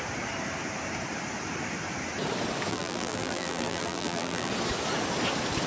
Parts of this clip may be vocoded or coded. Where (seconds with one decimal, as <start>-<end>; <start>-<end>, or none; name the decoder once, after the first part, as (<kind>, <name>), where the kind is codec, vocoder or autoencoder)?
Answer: 2.7-4.5 (vocoder, BigVGAN v2)